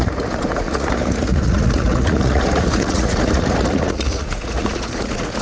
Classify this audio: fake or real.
fake